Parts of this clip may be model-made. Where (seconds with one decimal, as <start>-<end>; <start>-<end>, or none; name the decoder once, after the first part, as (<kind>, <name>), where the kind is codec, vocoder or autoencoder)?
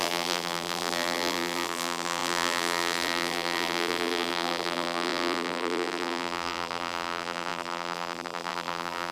0.0-9.1 (vocoder, BigVGAN v2)